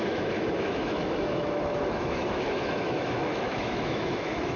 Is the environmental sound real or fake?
fake